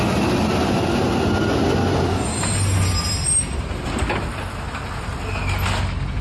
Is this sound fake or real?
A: real